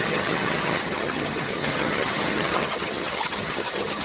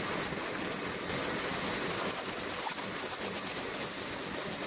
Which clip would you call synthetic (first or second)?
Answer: first